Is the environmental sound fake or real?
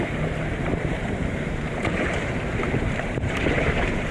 fake